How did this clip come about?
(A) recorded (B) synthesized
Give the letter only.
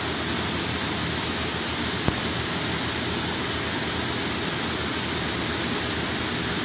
A